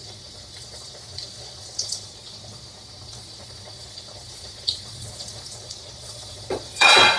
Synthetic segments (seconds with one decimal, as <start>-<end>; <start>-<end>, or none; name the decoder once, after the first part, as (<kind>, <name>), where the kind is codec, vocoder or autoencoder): 0.0-7.2 (vocoder, Vocos)